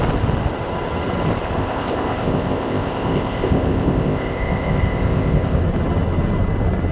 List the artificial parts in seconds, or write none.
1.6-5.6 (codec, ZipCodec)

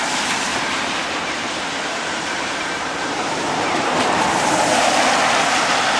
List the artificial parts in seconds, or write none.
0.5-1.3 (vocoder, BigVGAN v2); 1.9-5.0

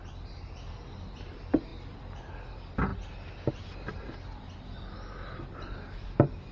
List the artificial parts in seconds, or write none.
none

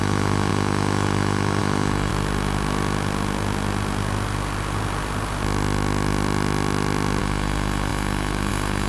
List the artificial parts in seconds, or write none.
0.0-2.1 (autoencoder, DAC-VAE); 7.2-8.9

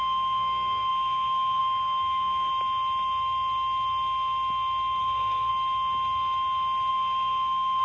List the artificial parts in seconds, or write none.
0.0-2.5 (codec, SNAC); 5.0-5.5; 6.9-7.8

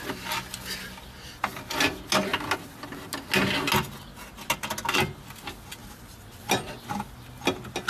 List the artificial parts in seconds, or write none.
none